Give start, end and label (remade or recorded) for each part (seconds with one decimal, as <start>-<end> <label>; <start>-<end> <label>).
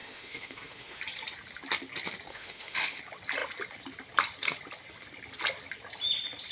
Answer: 0.0-1.0 remade; 1.0-2.3 recorded; 2.3-3.0 remade; 3.0-6.5 recorded